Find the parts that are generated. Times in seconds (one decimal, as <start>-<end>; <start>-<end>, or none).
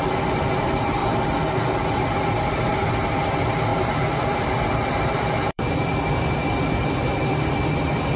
0.0-8.2